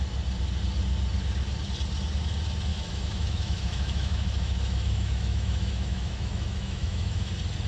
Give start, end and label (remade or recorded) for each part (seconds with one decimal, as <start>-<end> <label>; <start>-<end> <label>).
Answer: 0.0-2.7 recorded; 2.7-7.3 remade; 7.3-7.7 recorded